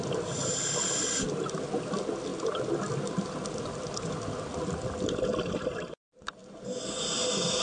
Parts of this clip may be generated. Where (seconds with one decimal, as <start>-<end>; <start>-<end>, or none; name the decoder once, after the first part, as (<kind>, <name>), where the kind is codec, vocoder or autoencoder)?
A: none